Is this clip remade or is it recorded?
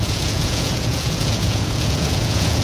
remade